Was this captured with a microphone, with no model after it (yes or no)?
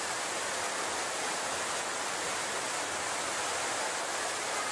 yes